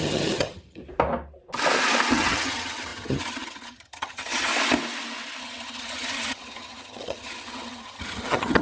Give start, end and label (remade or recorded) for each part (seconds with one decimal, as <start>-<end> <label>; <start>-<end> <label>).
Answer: 0.0-0.8 remade; 0.8-2.1 recorded; 2.1-4.5 remade; 4.5-5.4 recorded; 5.4-8.6 remade